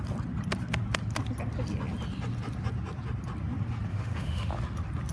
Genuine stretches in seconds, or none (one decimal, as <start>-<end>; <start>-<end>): 0.0-3.9; 4.5-5.1